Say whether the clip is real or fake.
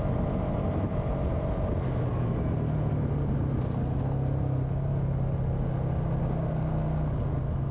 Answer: real